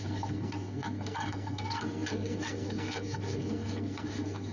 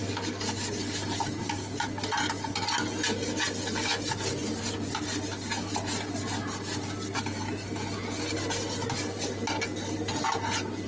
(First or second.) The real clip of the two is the second